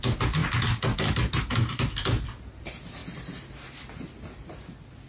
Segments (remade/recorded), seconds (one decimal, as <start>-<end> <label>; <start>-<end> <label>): 0.0-5.1 recorded